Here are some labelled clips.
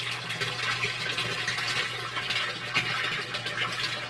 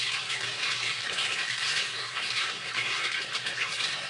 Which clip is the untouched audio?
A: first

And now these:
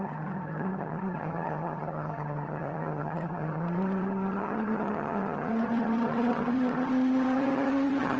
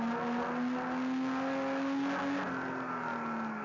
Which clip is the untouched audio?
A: second